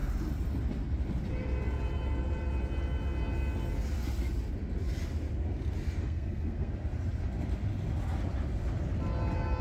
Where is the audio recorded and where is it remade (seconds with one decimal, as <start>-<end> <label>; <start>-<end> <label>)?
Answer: 0.0-6.0 recorded; 6.0-6.7 remade; 6.7-9.6 recorded